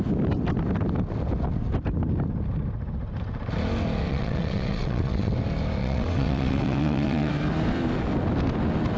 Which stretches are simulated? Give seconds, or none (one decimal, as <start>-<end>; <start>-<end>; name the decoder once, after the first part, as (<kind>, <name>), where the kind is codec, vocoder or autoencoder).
4.1-5.3 (vocoder, WaveNeXt); 5.8-7.3